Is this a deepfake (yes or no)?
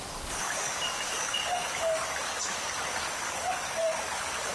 yes